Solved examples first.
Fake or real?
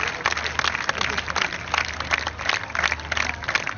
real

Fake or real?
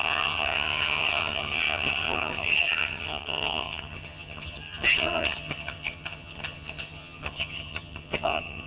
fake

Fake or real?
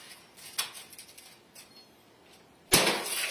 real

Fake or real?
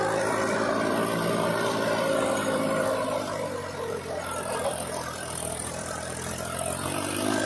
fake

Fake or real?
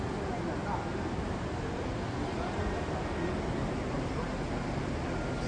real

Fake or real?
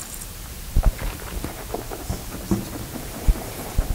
real